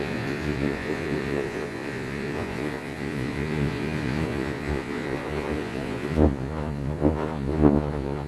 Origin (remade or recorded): remade